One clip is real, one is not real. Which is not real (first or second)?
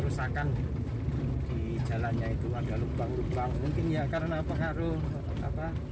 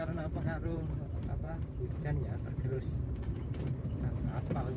second